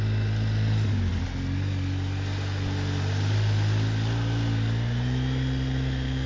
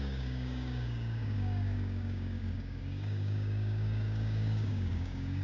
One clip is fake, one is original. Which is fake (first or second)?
second